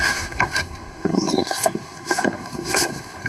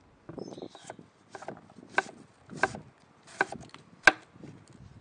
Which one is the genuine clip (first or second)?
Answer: second